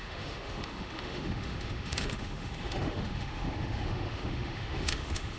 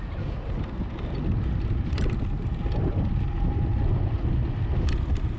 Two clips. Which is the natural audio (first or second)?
second